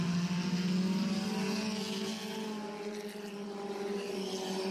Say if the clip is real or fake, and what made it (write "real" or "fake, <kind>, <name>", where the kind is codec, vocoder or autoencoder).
real